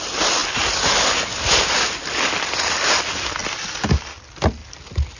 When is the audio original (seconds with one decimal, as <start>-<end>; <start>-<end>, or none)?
0.0-5.2